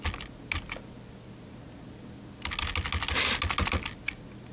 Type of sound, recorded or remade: recorded